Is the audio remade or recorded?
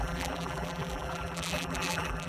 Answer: remade